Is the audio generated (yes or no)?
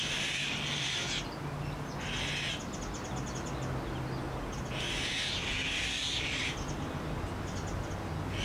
no